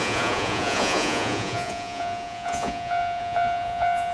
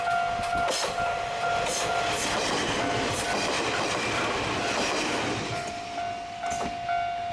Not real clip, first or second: first